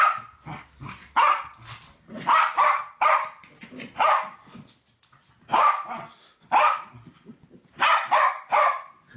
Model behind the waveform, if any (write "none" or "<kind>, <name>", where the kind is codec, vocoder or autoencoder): none